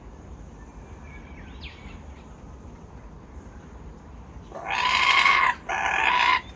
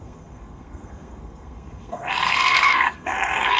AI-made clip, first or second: second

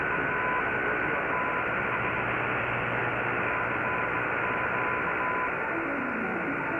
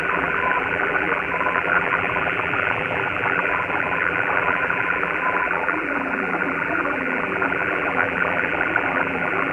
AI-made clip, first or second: second